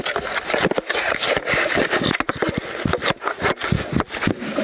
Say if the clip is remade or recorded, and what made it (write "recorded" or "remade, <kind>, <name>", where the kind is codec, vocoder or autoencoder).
recorded